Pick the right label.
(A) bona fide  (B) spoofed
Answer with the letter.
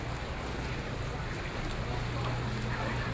A